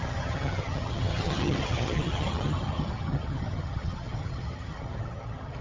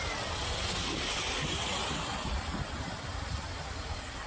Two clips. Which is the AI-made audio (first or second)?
first